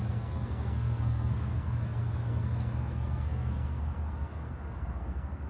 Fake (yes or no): yes